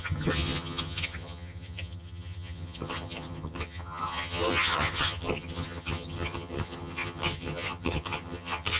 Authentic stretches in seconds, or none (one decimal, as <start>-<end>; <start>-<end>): none

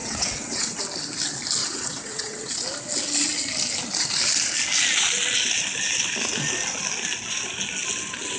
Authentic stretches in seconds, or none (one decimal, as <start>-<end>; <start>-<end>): 0.8-1.6; 2.5-8.4

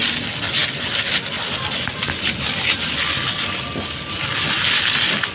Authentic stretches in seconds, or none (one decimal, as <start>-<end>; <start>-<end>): 0.0-5.3

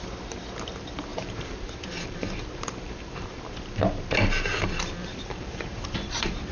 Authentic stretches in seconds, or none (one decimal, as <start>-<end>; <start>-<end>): 0.0-1.1; 3.4-5.1

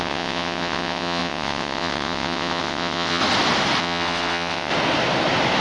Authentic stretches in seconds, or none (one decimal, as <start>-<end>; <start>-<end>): 3.2-3.8; 4.7-5.6

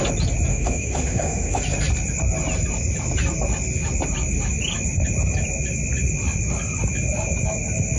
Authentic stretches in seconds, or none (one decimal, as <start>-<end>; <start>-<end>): 0.0-0.5; 1.6-8.0

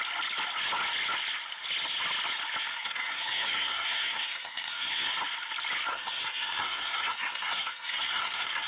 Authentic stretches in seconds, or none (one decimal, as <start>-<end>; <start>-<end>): 0.0-2.7; 5.1-5.9

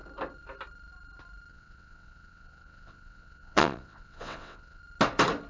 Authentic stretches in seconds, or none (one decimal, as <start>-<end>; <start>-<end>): 0.0-1.5; 4.8-5.5